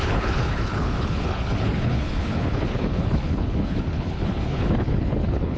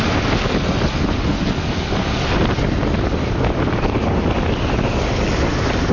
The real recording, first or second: second